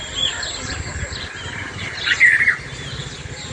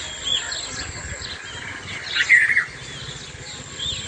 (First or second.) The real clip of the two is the second